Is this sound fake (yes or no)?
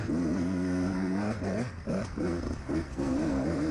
yes